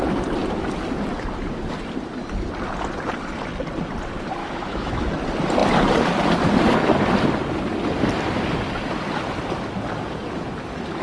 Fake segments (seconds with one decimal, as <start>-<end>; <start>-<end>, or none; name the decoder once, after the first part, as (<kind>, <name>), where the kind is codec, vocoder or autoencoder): 4.4-5.1 (autoencoder, DAC-VAE)